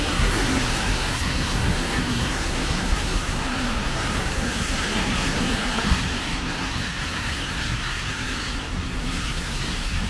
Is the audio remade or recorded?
remade